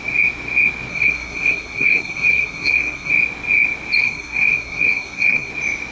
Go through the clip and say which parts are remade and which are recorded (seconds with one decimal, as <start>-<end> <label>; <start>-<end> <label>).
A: 0.0-0.9 recorded; 0.9-3.1 remade; 3.1-4.0 recorded; 4.0-5.5 remade; 5.5-5.9 recorded